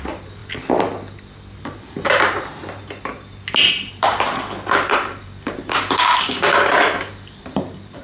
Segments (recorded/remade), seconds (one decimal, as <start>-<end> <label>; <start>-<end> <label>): 0.0-0.4 remade; 0.4-1.6 recorded; 1.6-2.6 remade; 2.6-3.9 recorded; 3.9-6.5 remade; 6.5-7.1 recorded; 7.1-8.0 remade

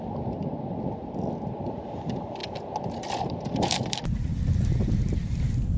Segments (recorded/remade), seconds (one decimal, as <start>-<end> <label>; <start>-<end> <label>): 0.0-2.4 remade; 2.4-3.0 recorded; 3.0-4.3 remade; 4.3-5.8 recorded

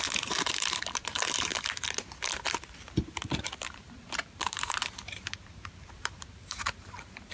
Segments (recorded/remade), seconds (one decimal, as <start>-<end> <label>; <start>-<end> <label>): 0.0-1.5 remade; 1.5-3.0 recorded; 3.0-7.3 remade